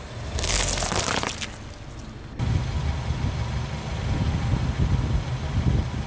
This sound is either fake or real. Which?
real